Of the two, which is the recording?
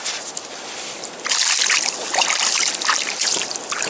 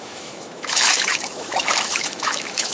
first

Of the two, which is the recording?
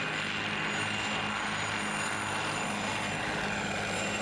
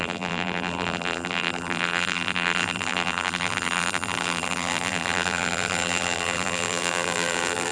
first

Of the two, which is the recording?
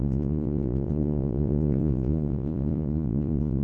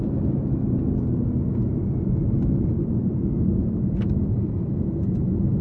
second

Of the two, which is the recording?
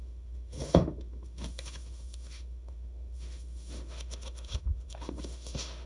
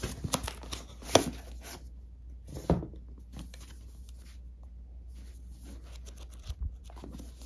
second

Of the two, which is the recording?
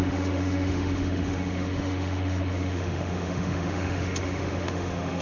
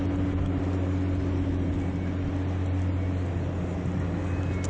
second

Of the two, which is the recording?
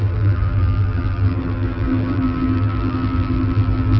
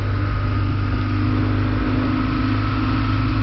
second